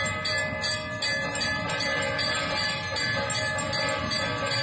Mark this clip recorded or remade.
recorded